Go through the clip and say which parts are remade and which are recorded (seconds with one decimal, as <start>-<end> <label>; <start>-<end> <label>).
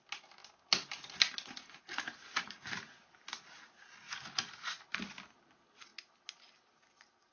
0.0-7.3 recorded